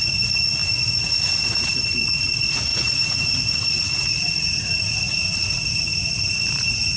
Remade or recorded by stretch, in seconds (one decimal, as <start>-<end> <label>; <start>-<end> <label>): 0.0-7.0 remade